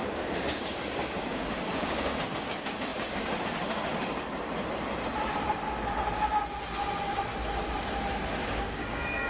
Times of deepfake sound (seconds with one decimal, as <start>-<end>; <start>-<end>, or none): 0.0-3.9; 8.5-9.3